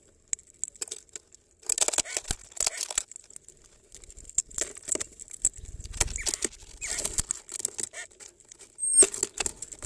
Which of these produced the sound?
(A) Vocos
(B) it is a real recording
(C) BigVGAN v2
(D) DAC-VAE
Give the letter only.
B